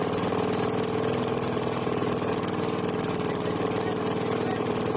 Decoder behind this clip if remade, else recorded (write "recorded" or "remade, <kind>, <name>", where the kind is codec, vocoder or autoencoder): recorded